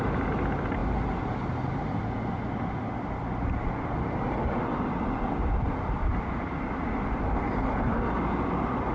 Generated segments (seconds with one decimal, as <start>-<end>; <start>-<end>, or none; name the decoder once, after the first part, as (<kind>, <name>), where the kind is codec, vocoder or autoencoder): none